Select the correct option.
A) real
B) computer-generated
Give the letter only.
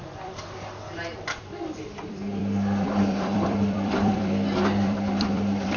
B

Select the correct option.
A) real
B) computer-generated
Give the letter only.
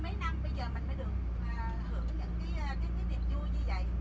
A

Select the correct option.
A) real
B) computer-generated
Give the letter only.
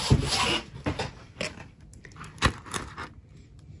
A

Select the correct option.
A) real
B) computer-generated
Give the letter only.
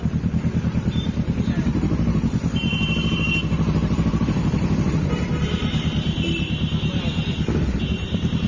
B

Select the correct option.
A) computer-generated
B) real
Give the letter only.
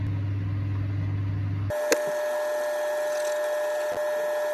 B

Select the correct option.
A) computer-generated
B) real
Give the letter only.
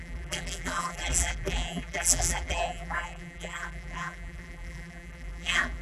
A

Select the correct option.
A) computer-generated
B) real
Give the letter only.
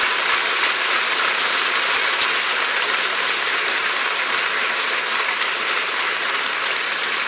A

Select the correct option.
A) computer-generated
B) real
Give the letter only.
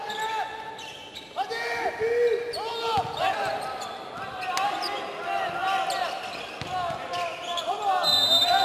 B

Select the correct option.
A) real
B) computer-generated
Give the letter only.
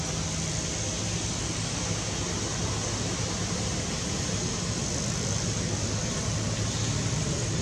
A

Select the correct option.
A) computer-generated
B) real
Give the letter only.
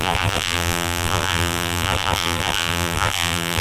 A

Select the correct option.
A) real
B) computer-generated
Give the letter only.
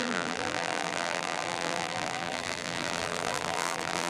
B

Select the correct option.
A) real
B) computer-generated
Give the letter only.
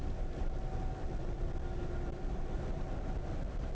A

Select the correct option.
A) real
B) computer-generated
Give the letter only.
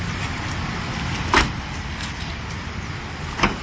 B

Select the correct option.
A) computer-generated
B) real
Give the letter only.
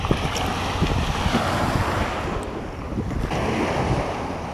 B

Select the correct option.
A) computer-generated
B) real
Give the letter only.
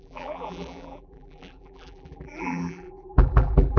A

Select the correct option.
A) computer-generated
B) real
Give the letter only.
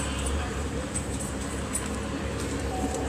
A